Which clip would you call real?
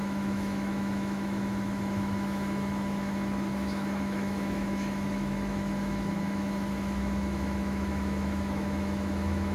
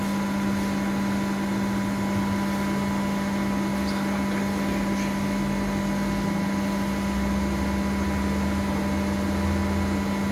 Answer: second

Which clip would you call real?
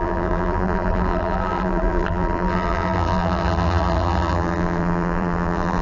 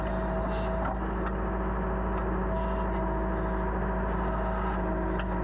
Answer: second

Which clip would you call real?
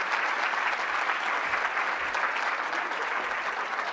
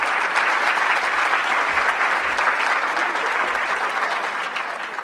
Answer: second